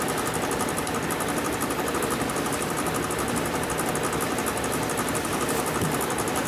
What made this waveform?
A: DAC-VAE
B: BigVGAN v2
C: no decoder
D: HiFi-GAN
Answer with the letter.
B